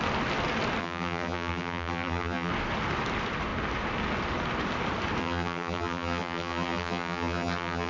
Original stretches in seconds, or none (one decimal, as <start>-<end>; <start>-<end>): 0.0-0.8; 2.5-5.2